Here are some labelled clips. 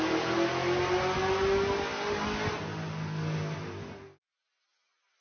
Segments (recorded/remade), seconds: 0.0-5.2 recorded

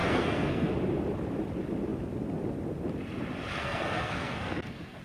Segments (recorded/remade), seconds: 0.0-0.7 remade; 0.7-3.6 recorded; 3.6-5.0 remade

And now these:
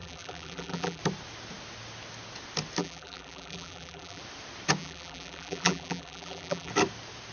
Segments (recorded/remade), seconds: 0.0-1.0 remade; 1.0-2.8 recorded; 2.8-4.2 remade; 4.2-4.8 recorded; 4.8-6.7 remade; 6.7-7.3 recorded